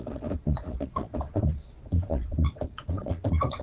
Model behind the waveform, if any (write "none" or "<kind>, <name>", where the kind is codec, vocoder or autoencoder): vocoder, Vocos